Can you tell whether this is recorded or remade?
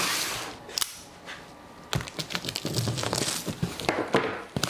recorded